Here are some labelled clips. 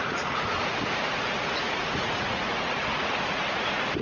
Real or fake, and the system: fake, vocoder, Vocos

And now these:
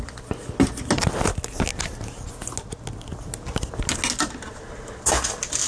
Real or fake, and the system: real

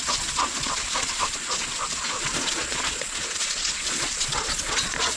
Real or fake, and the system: fake, vocoder, Vocos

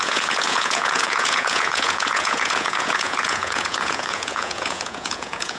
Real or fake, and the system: fake, vocoder, Vocos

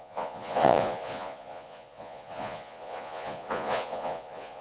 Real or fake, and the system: fake, vocoder, Vocos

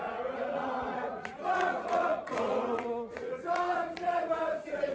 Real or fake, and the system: fake, vocoder, Vocos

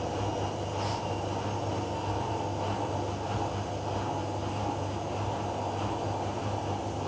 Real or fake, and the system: real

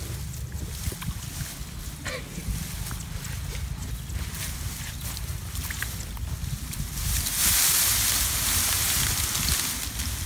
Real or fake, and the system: real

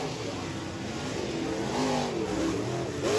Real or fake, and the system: real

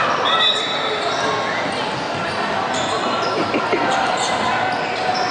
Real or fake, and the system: real